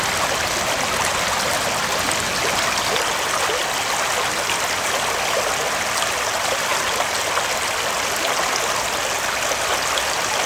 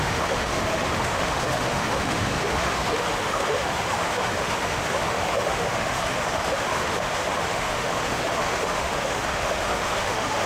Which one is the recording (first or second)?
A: first